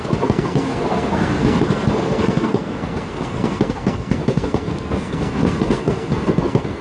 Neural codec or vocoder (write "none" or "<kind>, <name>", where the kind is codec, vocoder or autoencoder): codec, SNAC